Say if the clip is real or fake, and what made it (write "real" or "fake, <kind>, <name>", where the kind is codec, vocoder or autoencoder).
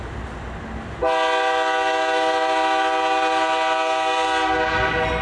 real